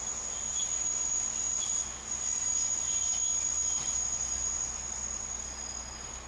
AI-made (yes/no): no